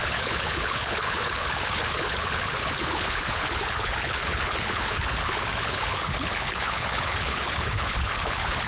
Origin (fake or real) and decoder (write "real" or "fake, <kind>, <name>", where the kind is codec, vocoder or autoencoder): fake, codec, HILCodec